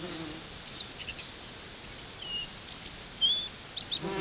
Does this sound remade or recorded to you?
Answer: recorded